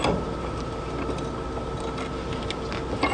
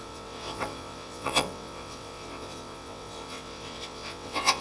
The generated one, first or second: second